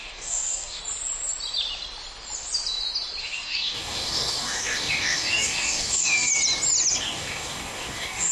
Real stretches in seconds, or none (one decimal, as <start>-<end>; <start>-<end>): 0.8-3.2; 6.3-7.0